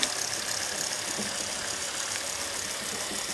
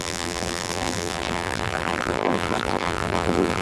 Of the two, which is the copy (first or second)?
second